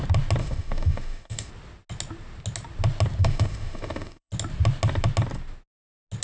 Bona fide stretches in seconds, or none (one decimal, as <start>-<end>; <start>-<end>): 0.0-0.4; 1.5-3.2; 4.3-6.2